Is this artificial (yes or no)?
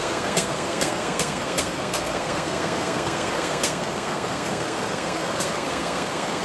yes